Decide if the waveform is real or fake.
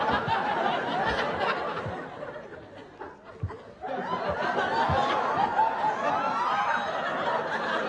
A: real